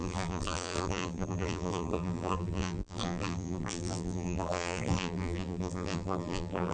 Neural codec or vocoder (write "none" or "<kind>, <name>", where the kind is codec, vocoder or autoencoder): vocoder, BigVGAN v2